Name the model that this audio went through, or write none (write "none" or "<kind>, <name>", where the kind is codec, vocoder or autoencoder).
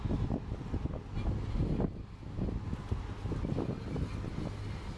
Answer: none